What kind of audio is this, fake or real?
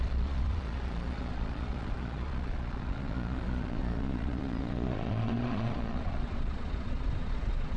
fake